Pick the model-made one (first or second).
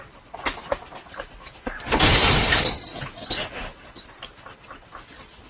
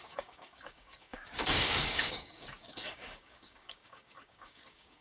second